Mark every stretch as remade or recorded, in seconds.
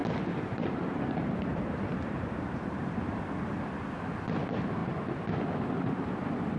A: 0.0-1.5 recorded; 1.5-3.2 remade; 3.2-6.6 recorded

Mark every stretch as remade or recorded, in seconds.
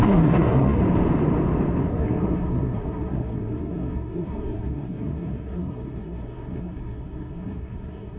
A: 0.0-0.8 remade; 0.8-1.9 recorded; 1.9-8.2 remade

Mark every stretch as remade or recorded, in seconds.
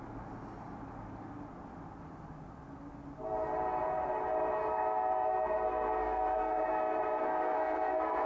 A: 0.0-4.7 recorded; 4.7-8.3 remade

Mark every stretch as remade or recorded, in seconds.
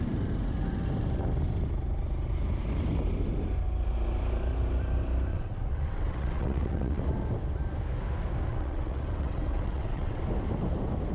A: 0.0-5.3 recorded; 5.3-7.0 remade; 7.0-8.5 recorded; 8.5-10.2 remade; 10.2-11.1 recorded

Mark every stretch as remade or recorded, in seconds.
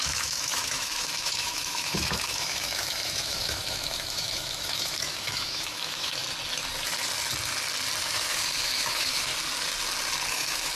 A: 0.0-6.2 remade; 6.2-8.0 recorded; 8.0-9.3 remade; 9.3-10.3 recorded; 10.3-10.8 remade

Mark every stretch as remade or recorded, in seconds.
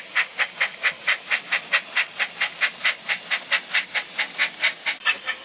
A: 0.0-5.4 recorded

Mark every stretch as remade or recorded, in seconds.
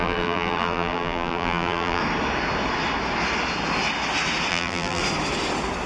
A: 0.0-2.0 remade; 2.0-4.5 recorded; 4.5-5.0 remade; 5.0-5.9 recorded